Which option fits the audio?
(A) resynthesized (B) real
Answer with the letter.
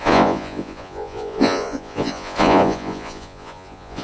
A